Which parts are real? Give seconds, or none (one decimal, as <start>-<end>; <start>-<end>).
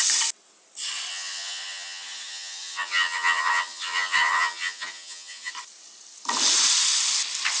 0.0-1.1; 5.5-7.6